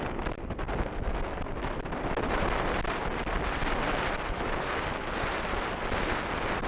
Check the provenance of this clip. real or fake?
real